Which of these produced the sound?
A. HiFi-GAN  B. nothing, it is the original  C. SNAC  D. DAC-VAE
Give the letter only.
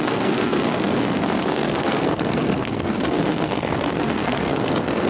C